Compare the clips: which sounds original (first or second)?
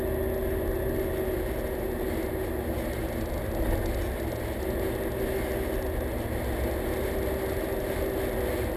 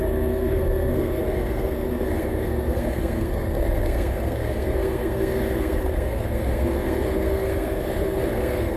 first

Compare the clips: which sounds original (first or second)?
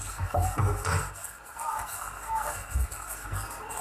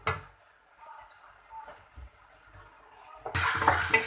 second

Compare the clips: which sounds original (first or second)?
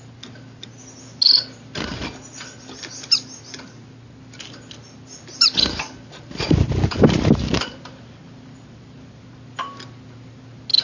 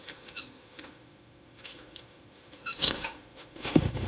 first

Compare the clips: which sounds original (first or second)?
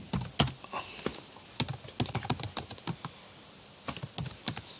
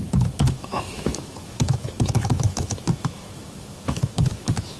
first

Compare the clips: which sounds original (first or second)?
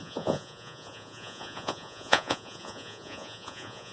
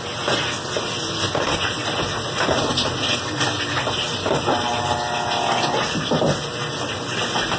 second